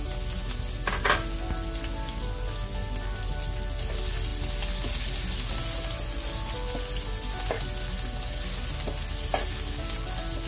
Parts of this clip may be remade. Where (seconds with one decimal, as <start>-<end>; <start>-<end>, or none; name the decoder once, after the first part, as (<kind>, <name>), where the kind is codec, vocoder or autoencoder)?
none